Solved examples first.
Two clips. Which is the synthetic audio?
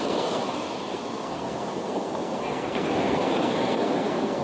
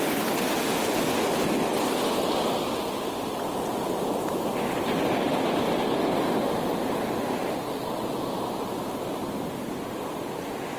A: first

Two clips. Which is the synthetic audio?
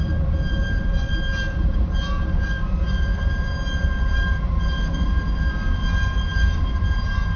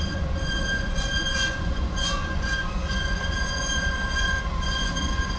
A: second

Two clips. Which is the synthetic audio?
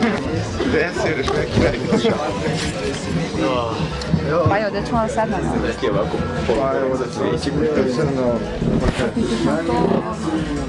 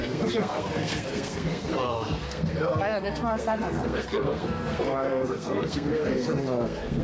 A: second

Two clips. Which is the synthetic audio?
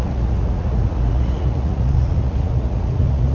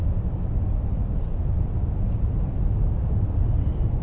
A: first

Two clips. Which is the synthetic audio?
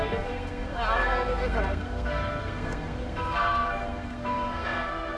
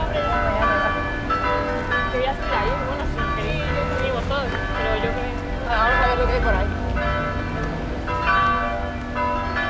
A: first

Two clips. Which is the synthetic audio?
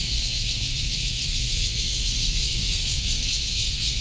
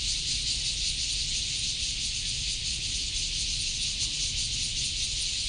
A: first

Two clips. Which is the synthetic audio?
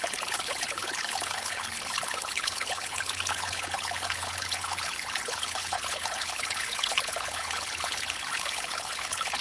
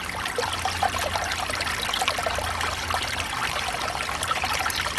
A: first